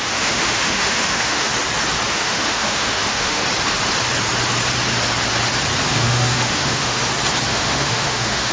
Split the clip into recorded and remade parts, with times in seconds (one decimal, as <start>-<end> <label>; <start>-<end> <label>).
0.0-1.5 remade; 1.5-2.1 recorded; 2.1-3.4 remade; 3.4-5.9 recorded; 5.9-7.0 remade; 7.0-7.5 recorded; 7.5-8.5 remade